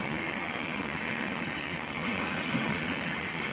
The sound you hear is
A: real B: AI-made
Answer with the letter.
B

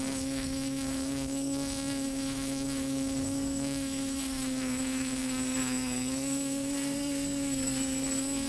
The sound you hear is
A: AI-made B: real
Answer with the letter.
A